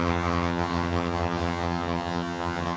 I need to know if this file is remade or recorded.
remade